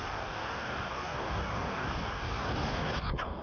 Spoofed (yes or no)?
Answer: yes